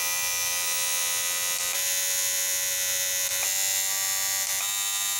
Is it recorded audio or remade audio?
recorded